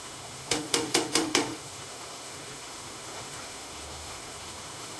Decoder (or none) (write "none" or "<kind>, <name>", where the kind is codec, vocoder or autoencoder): autoencoder, DAC-VAE